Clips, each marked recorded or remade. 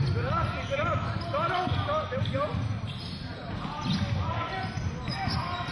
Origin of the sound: recorded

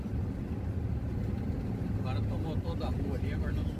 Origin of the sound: recorded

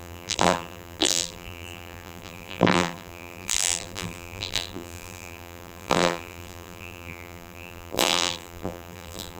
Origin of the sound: remade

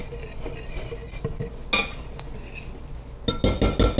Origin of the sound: recorded